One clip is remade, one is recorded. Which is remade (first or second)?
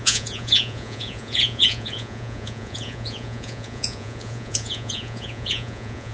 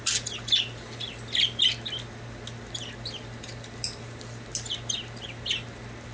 first